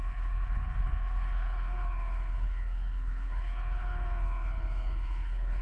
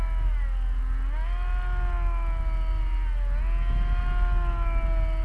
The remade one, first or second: first